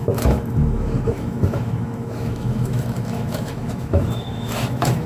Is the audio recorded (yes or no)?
no